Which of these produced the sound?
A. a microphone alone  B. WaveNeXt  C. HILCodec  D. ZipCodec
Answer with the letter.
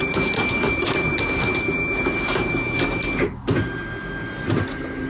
A